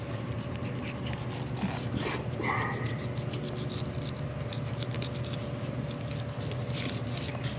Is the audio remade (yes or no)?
no